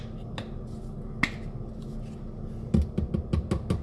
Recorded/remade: recorded